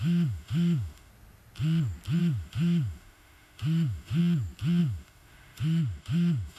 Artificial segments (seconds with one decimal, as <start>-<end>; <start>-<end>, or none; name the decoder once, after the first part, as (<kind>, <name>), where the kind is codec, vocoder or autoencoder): 0.0-1.1 (autoencoder, DAC-VAE); 2.2-4.2; 4.8-6.6